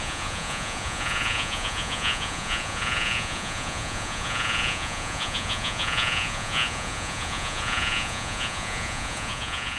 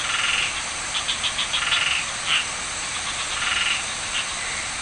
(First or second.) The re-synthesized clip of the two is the first